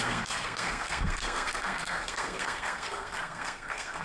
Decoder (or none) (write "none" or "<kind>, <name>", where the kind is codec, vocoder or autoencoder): codec, SNAC